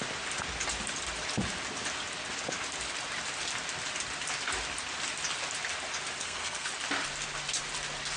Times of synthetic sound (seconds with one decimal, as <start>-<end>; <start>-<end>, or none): 6.2-6.7